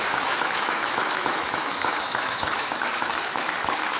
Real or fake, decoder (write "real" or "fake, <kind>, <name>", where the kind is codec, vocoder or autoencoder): fake, autoencoder, DAC-VAE